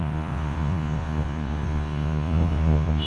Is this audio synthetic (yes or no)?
yes